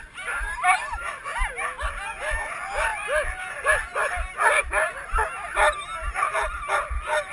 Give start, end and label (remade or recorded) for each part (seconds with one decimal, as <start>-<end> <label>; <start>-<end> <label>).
0.0-7.3 recorded